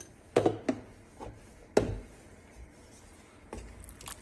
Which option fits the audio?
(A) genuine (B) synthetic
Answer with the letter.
A